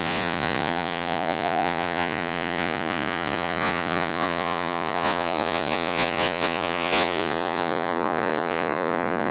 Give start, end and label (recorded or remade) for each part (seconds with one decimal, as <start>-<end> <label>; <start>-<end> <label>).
0.0-9.3 remade